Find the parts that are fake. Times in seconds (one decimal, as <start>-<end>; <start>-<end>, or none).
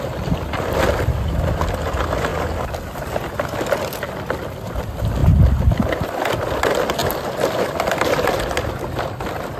none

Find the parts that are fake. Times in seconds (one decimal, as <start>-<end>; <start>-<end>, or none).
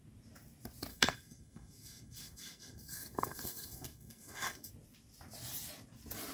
0.9-4.7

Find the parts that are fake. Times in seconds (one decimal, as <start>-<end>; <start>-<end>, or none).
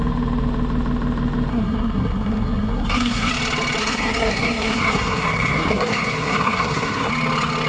1.5-3.3; 3.8-7.1